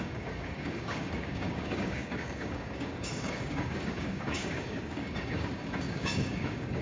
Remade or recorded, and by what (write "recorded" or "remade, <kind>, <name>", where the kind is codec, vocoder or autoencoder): remade, codec, DAC